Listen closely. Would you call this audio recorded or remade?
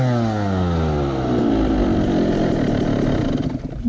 recorded